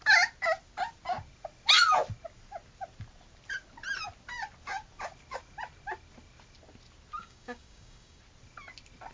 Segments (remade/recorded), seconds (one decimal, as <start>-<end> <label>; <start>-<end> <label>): 0.0-7.2 recorded; 7.2-8.2 remade; 8.2-9.1 recorded